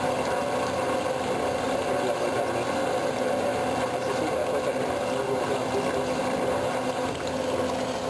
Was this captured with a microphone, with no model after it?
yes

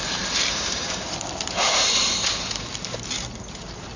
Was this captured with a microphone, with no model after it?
no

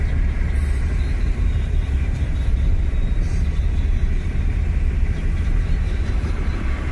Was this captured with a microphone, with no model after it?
no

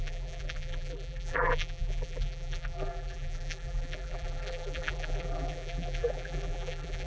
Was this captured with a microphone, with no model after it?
no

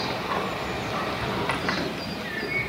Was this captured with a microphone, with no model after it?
yes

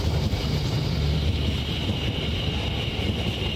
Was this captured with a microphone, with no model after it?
no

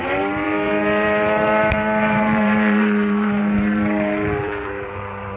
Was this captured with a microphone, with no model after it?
no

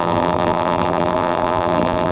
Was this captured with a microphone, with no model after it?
no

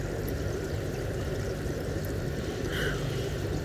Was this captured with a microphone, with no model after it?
no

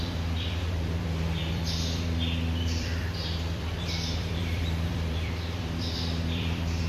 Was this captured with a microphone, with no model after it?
no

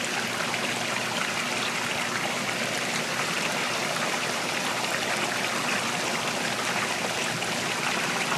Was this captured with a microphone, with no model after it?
no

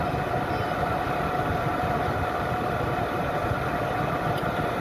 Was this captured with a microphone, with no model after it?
yes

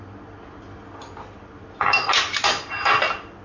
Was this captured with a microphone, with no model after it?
yes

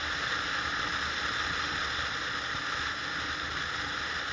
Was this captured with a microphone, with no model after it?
yes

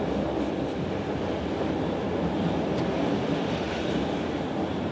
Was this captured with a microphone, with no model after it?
yes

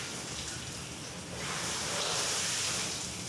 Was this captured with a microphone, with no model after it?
yes